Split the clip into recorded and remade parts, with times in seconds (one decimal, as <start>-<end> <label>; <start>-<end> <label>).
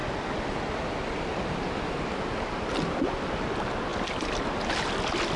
0.0-5.4 recorded